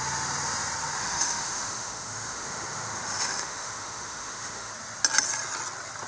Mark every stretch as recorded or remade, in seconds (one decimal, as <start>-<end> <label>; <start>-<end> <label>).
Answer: 0.0-1.0 recorded; 1.0-4.7 remade; 4.7-6.1 recorded